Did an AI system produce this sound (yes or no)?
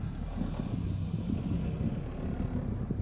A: no